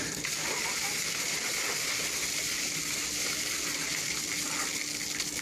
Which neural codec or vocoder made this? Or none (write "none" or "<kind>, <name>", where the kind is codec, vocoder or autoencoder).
none